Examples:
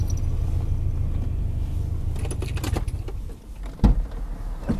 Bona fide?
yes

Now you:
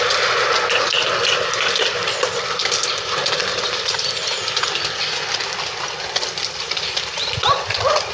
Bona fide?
yes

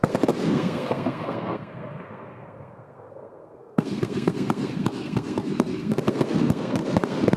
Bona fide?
no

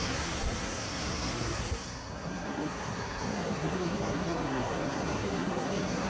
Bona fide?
no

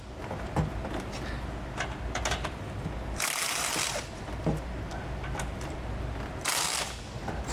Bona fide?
yes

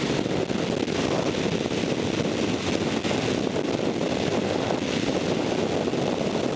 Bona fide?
yes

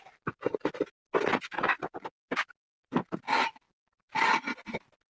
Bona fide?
yes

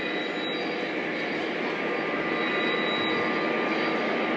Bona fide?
yes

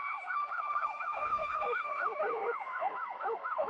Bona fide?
no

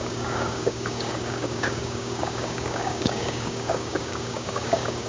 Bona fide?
no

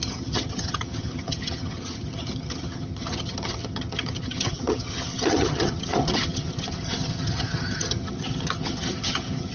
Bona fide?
no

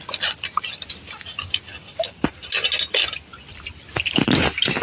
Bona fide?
yes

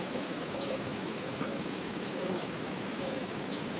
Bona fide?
no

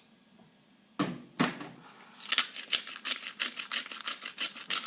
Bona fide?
yes